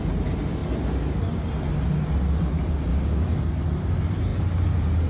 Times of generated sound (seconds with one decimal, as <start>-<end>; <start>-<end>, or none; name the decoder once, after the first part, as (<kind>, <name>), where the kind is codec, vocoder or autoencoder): 2.9-3.4 (codec, DAC)